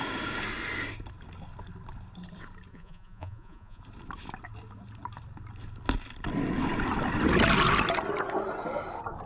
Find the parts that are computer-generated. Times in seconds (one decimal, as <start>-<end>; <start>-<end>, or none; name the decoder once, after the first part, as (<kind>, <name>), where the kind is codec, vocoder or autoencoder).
2.7-3.8 (vocoder, Vocos)